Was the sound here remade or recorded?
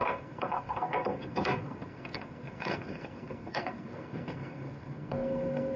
remade